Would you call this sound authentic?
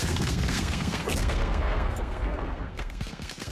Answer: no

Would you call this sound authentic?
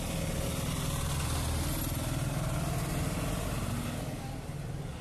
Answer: yes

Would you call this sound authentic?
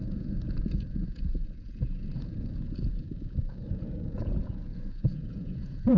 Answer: no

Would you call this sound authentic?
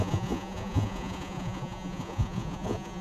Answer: no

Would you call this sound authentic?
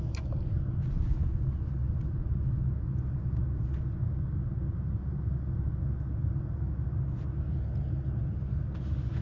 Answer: yes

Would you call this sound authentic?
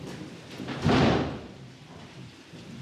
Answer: no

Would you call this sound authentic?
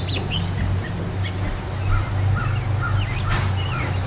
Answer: yes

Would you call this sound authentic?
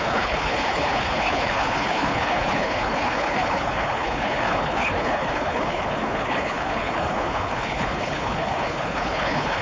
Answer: no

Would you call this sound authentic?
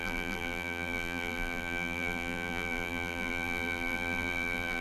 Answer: no